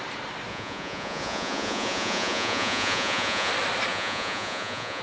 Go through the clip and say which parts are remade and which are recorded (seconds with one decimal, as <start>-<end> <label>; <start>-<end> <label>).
0.0-0.5 recorded; 0.5-3.5 remade; 3.5-3.9 recorded; 3.9-5.0 remade